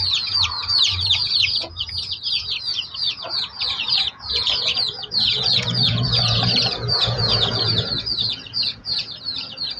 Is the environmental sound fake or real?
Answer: fake